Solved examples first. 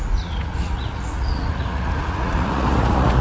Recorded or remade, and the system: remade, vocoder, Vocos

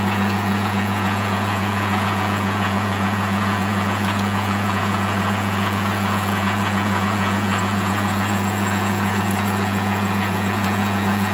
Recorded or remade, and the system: remade, vocoder, Vocos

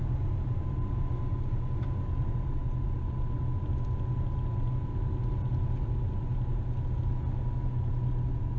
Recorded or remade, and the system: recorded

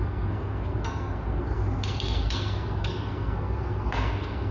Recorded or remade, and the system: remade, codec, SNAC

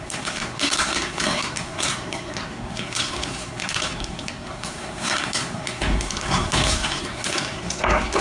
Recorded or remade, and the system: remade, codec, SNAC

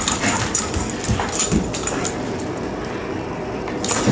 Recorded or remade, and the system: recorded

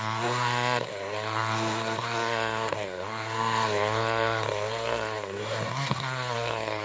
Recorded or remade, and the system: remade, codec, SNAC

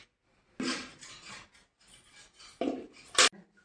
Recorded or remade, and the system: recorded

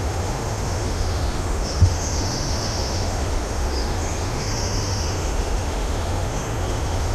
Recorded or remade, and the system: remade, autoencoder, DAC-VAE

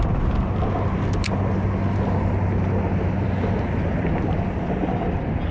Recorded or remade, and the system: recorded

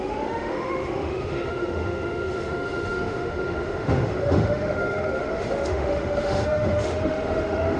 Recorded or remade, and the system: remade, autoencoder, DAC-VAE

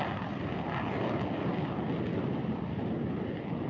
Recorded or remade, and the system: recorded